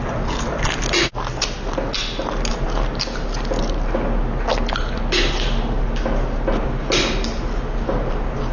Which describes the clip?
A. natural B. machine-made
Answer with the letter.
A